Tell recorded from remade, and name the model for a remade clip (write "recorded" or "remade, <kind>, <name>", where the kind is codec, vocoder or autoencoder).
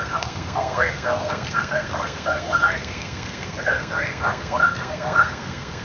remade, codec, SNAC